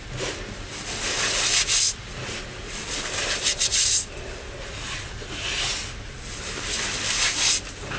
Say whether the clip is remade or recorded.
recorded